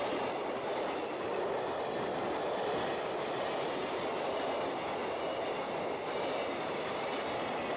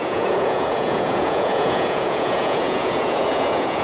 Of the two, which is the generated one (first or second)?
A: second